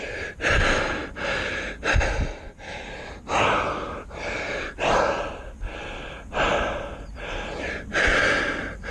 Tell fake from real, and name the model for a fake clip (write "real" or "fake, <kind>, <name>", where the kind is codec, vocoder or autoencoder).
real